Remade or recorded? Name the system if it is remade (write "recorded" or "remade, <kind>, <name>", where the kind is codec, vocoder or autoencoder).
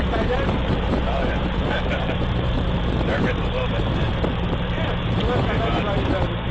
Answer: remade, vocoder, BigVGAN v2